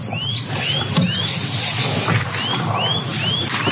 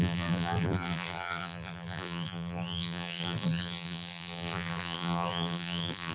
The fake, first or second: second